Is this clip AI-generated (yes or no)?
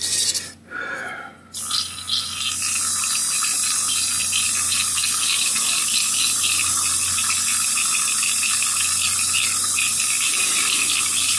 no